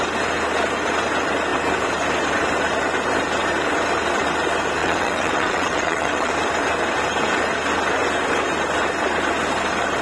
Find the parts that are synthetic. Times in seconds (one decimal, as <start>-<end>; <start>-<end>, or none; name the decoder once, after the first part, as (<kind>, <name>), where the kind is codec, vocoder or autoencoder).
4.8-6.3 (vocoder, WaveNeXt)